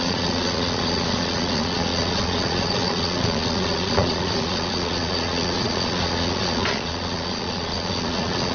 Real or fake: fake